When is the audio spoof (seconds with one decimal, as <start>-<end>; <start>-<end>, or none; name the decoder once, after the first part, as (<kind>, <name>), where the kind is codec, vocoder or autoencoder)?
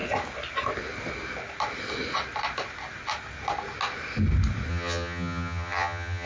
4.7-6.3 (vocoder, HiFi-GAN)